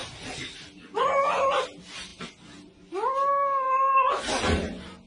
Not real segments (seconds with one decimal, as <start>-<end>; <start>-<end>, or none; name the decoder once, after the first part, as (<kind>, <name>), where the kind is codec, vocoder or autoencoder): none